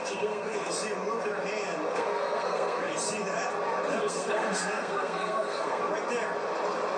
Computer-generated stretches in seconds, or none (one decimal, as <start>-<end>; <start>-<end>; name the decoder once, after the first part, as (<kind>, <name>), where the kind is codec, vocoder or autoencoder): 0.0-0.7 (codec, SNAC); 1.9-2.9; 4.0-5.8